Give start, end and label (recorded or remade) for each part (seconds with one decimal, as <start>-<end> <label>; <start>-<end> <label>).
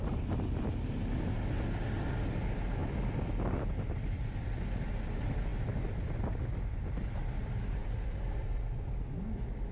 0.0-9.7 recorded